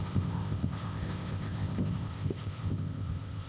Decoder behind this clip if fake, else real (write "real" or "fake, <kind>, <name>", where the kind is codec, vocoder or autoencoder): fake, codec, ZipCodec